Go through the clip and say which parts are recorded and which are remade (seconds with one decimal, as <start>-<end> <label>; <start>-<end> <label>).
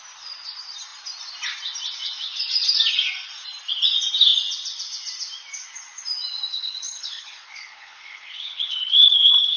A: 0.0-6.5 recorded; 6.5-9.6 remade